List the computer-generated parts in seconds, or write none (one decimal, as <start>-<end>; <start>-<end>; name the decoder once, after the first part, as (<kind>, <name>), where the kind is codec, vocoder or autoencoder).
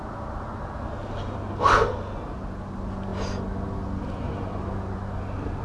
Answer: none